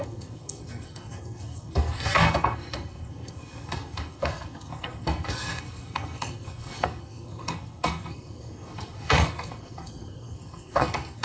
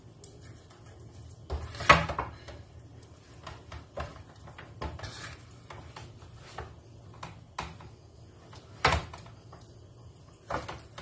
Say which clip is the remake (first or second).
first